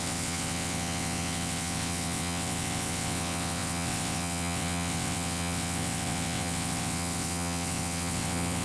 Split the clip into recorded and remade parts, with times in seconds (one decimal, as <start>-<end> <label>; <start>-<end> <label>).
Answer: 0.0-8.6 remade